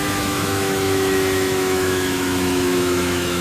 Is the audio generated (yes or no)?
yes